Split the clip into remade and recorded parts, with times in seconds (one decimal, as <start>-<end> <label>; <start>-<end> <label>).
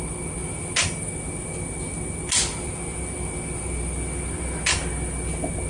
0.0-5.7 recorded